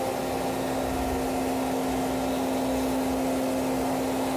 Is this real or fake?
real